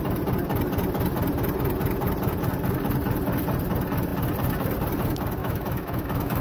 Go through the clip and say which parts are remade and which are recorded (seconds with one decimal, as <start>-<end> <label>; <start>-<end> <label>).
0.0-5.4 recorded; 5.4-6.4 remade